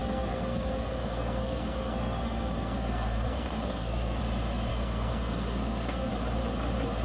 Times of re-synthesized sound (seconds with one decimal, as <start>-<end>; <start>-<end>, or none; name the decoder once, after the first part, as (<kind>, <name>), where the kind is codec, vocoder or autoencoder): 0.0-4.2 (codec, SNAC); 4.7-6.1